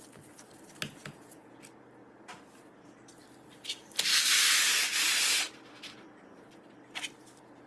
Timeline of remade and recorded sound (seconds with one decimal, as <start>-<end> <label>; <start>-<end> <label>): 0.0-1.0 recorded; 1.0-1.6 remade; 1.6-7.7 recorded